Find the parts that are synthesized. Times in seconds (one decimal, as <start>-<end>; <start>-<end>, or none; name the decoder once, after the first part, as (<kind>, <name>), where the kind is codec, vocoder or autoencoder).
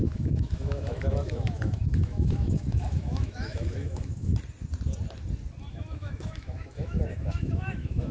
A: 0.0-4.3 (autoencoder, DAC-VAE); 5.7-8.1